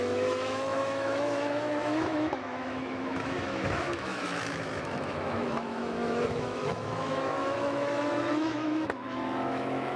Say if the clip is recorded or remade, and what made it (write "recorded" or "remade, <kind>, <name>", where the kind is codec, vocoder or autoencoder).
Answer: remade, autoencoder, DAC-VAE